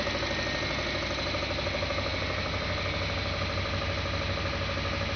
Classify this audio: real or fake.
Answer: real